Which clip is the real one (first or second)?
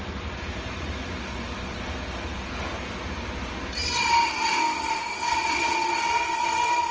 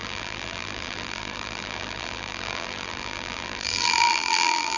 first